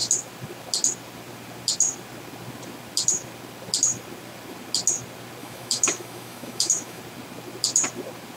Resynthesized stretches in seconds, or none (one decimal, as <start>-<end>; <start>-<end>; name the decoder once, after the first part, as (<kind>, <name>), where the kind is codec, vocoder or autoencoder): 5.4-7.0 (autoencoder, DAC-VAE)